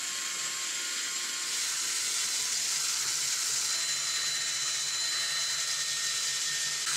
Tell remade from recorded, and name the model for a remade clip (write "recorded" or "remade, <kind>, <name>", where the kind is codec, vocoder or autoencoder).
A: recorded